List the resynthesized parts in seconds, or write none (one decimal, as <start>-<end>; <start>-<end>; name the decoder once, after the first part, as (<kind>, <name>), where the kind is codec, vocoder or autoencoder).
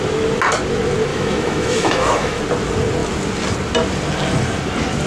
1.1-2.4 (autoencoder, DAC-VAE)